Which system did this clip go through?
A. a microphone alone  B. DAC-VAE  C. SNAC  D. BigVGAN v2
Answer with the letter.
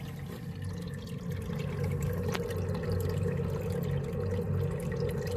A